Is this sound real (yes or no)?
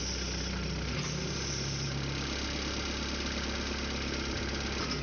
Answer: yes